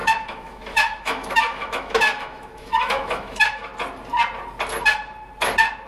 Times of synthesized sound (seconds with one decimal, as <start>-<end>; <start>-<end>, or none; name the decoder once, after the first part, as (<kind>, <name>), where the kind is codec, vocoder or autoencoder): 0.0-3.7 (autoencoder, DAC-VAE)